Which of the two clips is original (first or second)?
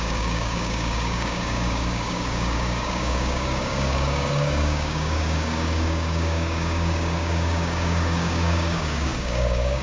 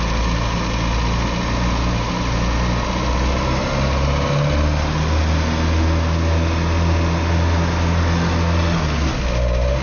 second